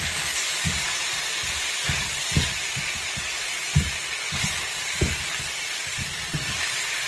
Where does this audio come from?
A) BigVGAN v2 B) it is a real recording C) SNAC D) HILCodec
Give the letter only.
A